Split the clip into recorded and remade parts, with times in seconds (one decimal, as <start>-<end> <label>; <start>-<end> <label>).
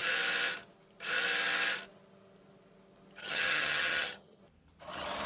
0.0-3.2 recorded; 3.2-4.4 remade; 4.4-5.3 recorded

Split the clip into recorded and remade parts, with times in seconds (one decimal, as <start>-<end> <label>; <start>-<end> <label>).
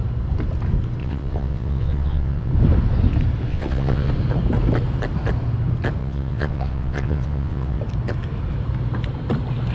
0.0-1.0 recorded; 1.0-2.5 remade; 2.5-3.5 recorded; 3.5-4.1 remade; 4.1-6.0 recorded; 6.0-7.8 remade; 7.8-9.7 recorded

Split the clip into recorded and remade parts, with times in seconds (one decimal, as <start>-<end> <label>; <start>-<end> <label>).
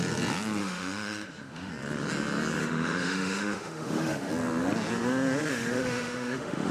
0.0-0.6 recorded; 0.6-1.7 remade; 1.7-2.6 recorded; 2.6-4.3 remade; 4.3-5.5 recorded; 5.5-6.7 remade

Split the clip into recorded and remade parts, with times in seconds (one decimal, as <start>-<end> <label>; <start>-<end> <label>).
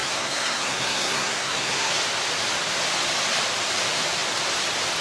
0.0-1.9 remade; 1.9-5.0 recorded